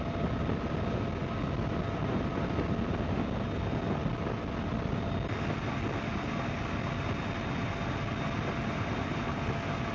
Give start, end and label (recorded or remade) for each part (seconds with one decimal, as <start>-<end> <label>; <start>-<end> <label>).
0.0-9.9 recorded

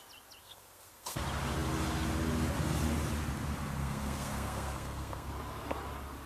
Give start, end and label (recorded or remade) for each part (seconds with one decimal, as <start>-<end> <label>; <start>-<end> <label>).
0.0-0.4 recorded; 0.4-1.2 remade; 1.2-3.8 recorded; 3.8-5.3 remade; 5.3-6.3 recorded

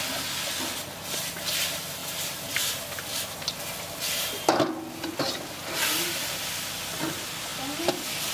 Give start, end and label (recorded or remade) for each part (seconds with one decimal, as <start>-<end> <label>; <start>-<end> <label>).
0.0-2.0 recorded; 2.0-7.0 remade; 7.0-7.5 recorded; 7.5-8.3 remade

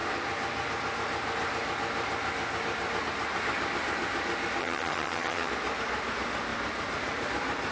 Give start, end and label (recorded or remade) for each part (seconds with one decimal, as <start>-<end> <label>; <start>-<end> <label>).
0.0-4.6 recorded; 4.6-5.5 remade; 5.5-7.7 recorded

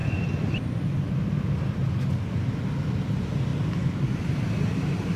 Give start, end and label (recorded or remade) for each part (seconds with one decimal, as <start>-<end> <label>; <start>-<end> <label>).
0.0-3.1 recorded; 3.1-5.2 remade

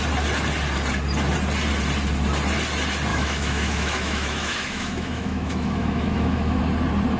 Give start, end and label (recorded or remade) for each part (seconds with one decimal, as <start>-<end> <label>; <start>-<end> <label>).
0.0-3.1 recorded; 3.1-6.6 remade; 6.6-7.2 recorded

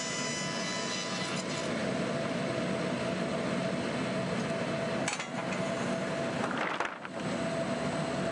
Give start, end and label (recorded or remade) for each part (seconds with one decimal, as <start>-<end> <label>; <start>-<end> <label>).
0.0-8.3 recorded